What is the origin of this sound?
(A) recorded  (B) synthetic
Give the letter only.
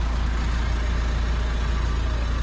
A